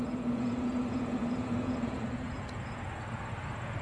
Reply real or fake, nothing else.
fake